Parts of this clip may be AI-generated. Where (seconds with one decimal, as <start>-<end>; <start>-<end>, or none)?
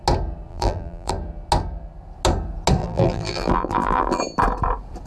0.5-1.1; 2.8-4.2